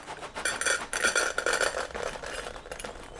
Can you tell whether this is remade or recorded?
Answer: recorded